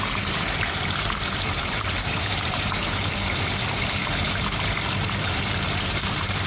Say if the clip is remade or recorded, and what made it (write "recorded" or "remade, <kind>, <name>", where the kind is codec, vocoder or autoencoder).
remade, vocoder, BigVGAN v2